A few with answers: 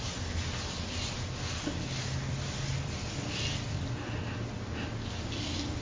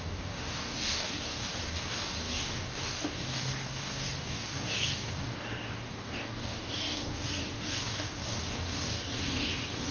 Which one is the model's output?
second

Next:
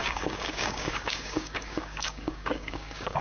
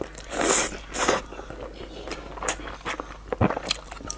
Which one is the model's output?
first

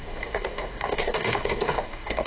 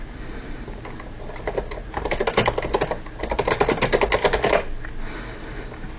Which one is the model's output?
first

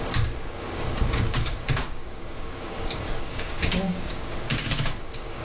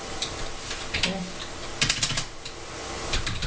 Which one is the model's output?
first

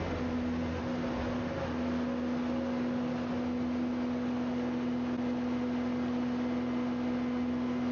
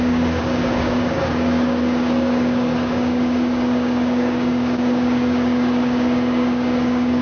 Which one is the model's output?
second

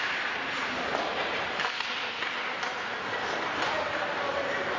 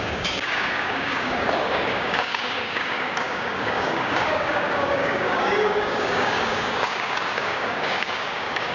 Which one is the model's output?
second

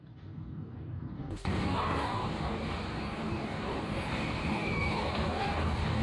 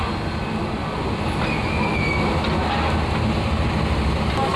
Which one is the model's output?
first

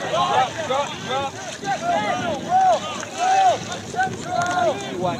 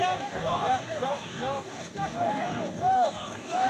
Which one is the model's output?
second